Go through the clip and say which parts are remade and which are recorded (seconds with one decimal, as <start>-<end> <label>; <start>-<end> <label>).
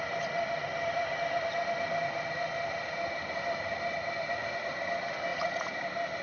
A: 0.0-5.3 recorded; 5.3-5.8 remade; 5.8-6.2 recorded